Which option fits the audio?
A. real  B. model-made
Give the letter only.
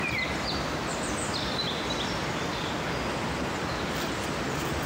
A